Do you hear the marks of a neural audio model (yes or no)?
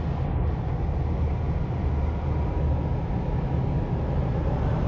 no